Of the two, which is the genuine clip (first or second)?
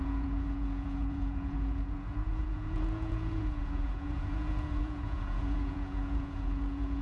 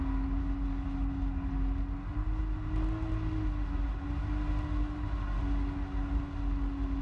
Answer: second